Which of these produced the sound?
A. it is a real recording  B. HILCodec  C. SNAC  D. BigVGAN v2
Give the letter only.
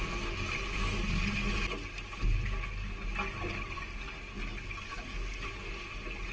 A